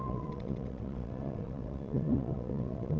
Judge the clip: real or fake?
fake